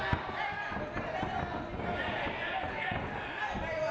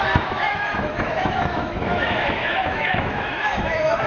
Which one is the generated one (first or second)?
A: second